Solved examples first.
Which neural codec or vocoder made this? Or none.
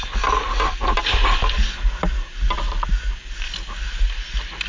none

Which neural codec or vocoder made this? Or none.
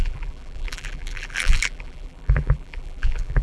vocoder, BigVGAN v2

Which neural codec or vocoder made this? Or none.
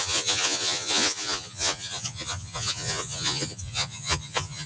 vocoder, Vocos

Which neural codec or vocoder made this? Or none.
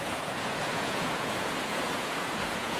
vocoder, Vocos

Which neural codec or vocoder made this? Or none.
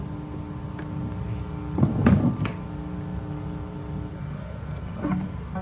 none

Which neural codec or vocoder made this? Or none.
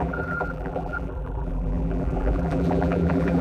vocoder, BigVGAN v2